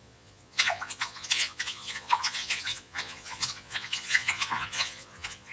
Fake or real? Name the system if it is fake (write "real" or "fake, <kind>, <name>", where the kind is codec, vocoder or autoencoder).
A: fake, vocoder, Vocos